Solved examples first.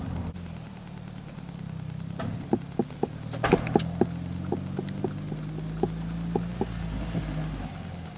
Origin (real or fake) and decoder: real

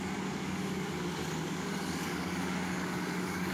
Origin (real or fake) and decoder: fake, codec, DAC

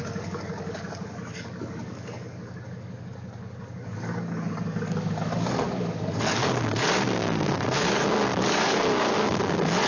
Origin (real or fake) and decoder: fake, codec, DAC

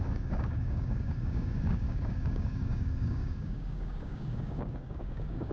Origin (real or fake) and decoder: fake, codec, DAC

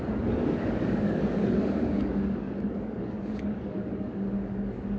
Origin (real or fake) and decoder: fake, codec, DAC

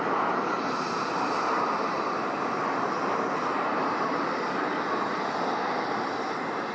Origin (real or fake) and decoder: real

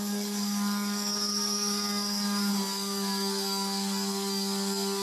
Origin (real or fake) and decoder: fake, codec, DAC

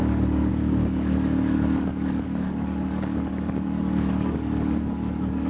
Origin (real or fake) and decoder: fake, codec, DAC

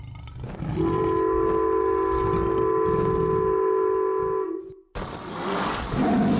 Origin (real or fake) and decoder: real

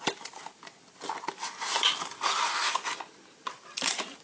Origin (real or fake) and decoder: real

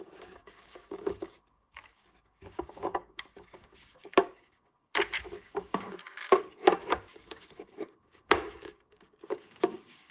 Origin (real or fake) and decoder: fake, codec, DAC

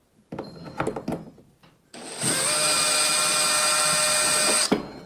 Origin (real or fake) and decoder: real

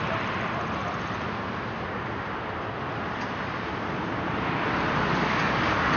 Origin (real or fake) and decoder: real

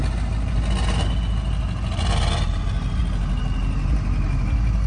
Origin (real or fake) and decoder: real